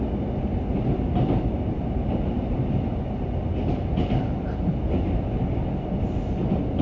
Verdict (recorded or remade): recorded